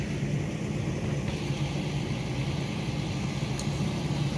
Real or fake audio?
real